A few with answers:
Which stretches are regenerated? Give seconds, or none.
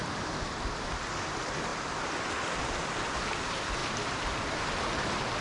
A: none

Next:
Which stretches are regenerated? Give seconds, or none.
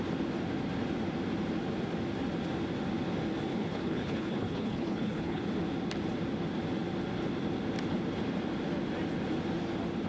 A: 3.5-5.4 (codec, HILCodec)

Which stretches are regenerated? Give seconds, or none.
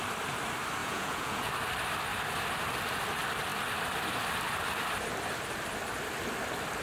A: 0.8-1.5 (vocoder, Vocos)